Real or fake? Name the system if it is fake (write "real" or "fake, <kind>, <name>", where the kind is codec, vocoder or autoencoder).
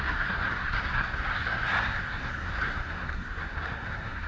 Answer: fake, codec, SNAC